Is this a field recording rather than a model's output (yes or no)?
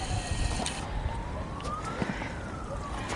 yes